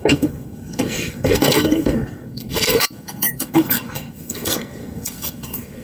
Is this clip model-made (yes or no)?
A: yes